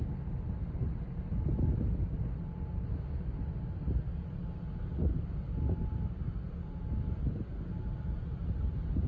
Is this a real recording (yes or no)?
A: yes